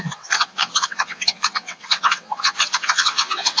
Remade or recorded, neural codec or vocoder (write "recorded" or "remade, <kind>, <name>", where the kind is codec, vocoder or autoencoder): remade, vocoder, WaveNeXt